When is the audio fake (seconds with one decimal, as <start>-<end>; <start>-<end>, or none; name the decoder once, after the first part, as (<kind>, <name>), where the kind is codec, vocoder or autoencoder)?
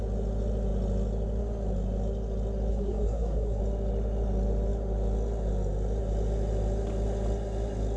2.7-3.6 (codec, SNAC)